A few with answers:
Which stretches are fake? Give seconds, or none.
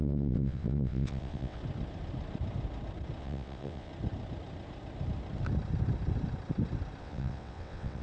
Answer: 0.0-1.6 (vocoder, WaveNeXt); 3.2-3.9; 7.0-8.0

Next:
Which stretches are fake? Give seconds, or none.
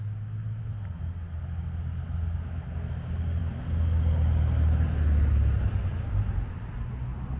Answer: none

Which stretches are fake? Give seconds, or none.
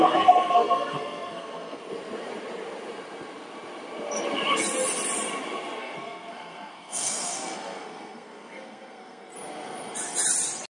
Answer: 0.0-1.8 (codec, SNAC); 5.8-9.3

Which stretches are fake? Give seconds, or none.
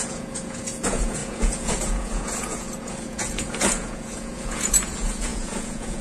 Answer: 0.0-6.0 (vocoder, Vocos)